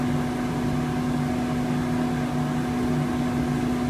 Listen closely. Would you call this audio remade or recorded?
recorded